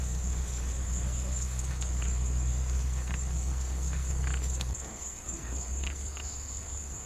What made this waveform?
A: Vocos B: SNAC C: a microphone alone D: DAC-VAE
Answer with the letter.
B